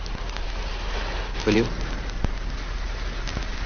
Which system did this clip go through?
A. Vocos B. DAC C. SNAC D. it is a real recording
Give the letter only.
D